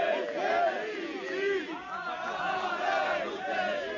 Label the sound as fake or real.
fake